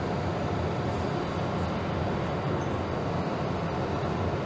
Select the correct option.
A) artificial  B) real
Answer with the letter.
B